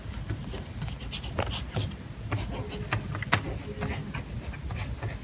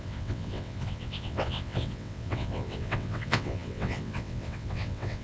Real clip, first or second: first